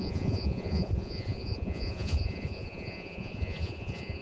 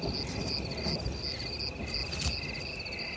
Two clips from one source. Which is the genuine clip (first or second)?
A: second